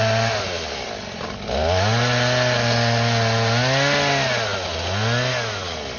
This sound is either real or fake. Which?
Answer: real